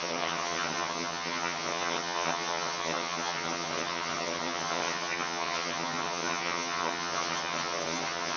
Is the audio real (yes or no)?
no